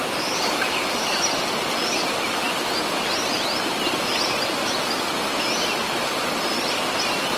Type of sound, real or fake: real